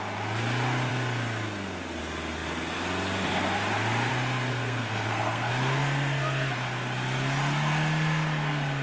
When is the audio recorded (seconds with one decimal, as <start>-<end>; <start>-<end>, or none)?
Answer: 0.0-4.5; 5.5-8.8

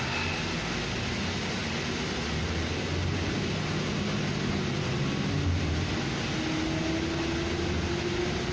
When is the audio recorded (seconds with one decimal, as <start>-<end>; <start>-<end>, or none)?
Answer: 0.0-8.5

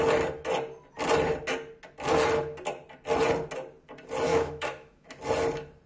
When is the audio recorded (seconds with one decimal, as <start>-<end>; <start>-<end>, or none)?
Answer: 0.0-4.3; 5.1-5.9